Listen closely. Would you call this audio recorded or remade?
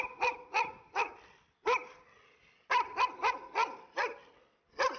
recorded